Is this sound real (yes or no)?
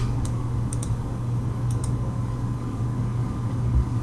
no